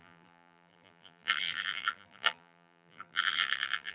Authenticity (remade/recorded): remade